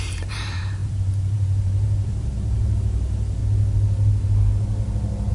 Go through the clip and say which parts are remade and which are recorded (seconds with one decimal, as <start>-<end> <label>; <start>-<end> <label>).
0.0-3.4 remade; 3.4-5.3 recorded